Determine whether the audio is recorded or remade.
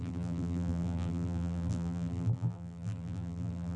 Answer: remade